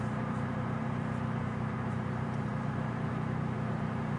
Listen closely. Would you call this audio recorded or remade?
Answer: remade